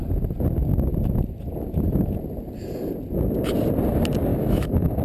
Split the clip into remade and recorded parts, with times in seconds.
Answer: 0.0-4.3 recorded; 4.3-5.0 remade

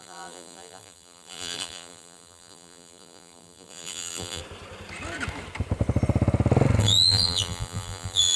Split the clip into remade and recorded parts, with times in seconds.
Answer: 0.0-4.4 remade; 4.4-6.8 recorded; 6.8-8.4 remade